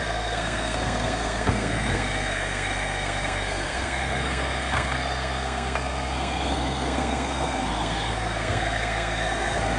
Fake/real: fake